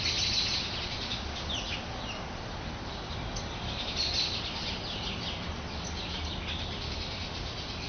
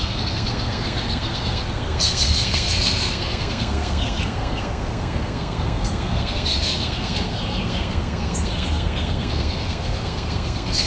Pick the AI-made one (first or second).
second